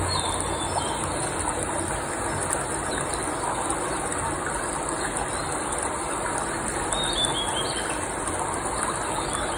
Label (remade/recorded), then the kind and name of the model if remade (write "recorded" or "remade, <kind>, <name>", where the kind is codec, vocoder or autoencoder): recorded